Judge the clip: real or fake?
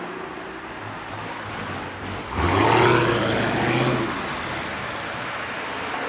real